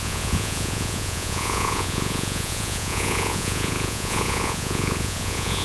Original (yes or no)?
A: no